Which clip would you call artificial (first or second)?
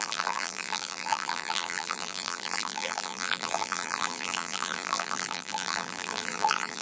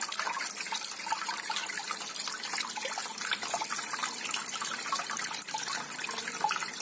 first